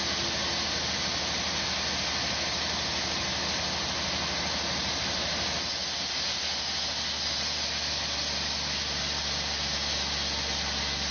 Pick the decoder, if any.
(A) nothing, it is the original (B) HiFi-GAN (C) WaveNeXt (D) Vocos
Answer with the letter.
A